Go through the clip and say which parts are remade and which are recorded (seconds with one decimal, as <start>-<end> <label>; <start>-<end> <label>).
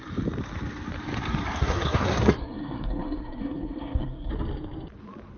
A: 0.0-1.6 recorded; 1.6-4.3 remade; 4.3-5.4 recorded